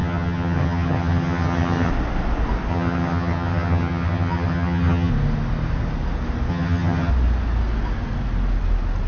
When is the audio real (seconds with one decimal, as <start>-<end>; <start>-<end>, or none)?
1.9-2.7; 5.1-6.5; 7.1-9.1